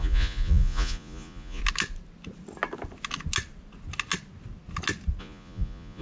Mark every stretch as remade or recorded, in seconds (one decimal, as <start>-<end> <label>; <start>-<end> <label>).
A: 0.0-1.6 remade; 1.6-5.2 recorded; 5.2-6.0 remade

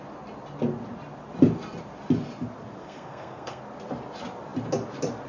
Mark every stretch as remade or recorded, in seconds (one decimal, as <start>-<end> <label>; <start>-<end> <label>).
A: 0.0-2.8 recorded; 2.8-3.6 remade; 3.6-5.3 recorded

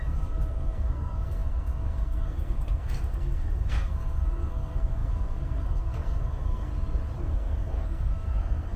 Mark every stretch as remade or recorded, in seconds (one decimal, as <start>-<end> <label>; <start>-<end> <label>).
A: 0.0-6.7 remade; 6.7-7.2 recorded; 7.2-8.8 remade

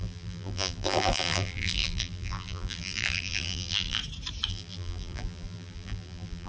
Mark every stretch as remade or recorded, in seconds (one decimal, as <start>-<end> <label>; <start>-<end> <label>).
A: 0.0-4.0 remade; 4.0-4.5 recorded; 4.5-6.5 remade

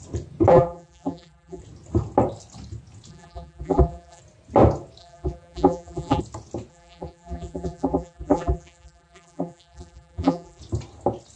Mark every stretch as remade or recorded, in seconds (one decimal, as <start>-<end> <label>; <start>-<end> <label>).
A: 0.0-0.5 recorded; 0.5-1.6 remade; 1.6-3.1 recorded; 3.1-4.2 remade; 4.2-5.0 recorded; 5.0-6.2 remade; 6.2-6.7 recorded; 6.7-10.6 remade; 10.6-11.4 recorded

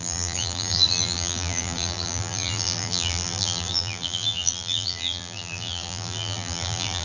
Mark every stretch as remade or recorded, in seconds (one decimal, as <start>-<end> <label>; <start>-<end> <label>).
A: 0.0-7.0 remade

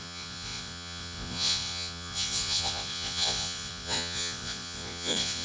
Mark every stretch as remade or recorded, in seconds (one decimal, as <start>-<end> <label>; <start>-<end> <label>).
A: 0.0-5.4 remade

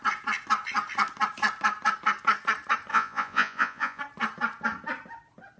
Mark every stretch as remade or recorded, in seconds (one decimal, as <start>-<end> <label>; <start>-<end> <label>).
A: 0.0-2.9 recorded; 2.9-4.0 remade; 4.0-5.6 recorded